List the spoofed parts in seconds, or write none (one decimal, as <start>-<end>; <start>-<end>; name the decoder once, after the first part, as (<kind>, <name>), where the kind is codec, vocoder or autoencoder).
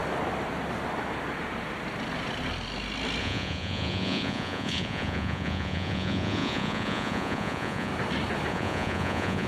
3.2-7.9 (vocoder, Vocos); 8.5-9.5